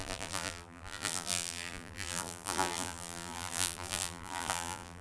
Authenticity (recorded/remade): remade